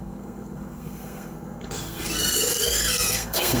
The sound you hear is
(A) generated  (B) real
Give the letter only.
A